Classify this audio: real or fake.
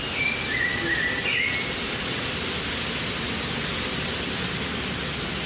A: real